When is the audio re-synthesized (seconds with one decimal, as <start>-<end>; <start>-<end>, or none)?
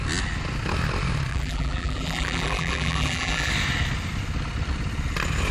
1.3-3.5